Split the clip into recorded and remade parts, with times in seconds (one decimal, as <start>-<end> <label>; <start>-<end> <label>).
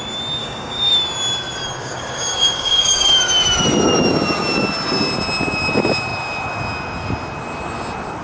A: 0.0-0.4 recorded; 0.4-0.9 remade; 0.9-1.8 recorded; 1.8-3.2 remade; 3.2-8.2 recorded